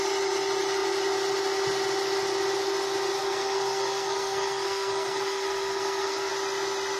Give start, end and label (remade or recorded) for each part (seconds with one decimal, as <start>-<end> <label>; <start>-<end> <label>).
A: 0.0-3.2 recorded; 3.2-6.3 remade; 6.3-7.0 recorded